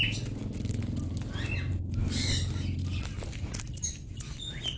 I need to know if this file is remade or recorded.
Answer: recorded